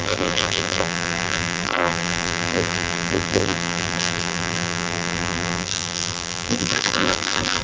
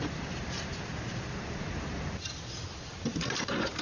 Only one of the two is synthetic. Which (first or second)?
first